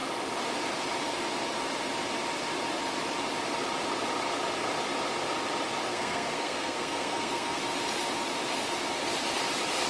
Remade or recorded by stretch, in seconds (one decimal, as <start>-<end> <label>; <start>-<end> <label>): 0.0-5.9 recorded; 5.9-7.6 remade; 7.6-9.9 recorded